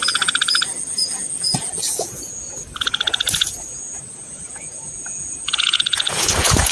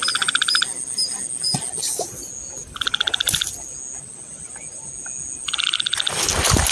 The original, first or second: second